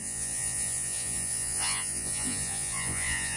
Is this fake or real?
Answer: fake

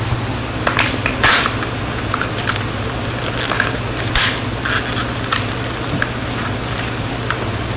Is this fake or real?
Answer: real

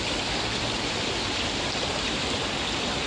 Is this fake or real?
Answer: real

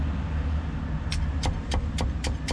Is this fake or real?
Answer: real